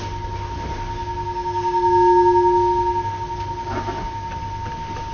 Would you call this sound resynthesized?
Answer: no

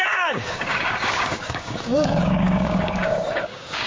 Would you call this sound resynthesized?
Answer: yes